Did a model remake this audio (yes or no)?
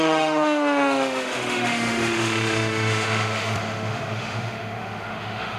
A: yes